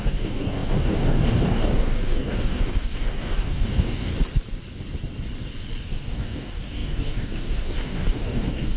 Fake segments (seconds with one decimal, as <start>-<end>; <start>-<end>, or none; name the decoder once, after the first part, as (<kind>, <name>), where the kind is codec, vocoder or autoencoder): 0.0-4.1 (codec, DAC); 5.8-8.8